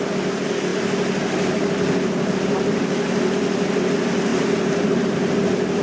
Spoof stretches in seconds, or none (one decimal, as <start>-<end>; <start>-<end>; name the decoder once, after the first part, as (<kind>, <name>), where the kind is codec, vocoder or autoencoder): 4.3-5.3 (vocoder, BigVGAN v2)